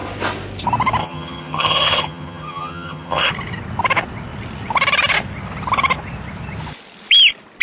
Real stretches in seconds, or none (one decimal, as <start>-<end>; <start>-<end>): 0.0-1.0; 3.3-7.6